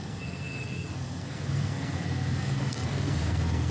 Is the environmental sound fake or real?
fake